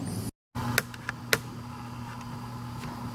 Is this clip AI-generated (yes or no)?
no